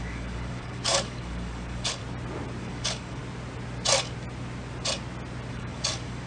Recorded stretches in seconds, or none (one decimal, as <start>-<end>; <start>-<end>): 2.0-2.6; 3.2-5.5